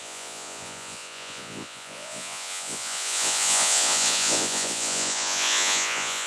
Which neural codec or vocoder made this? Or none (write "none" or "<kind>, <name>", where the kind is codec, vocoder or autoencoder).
vocoder, Vocos